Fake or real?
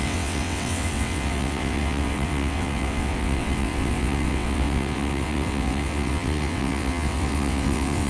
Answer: fake